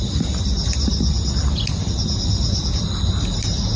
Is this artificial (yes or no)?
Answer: no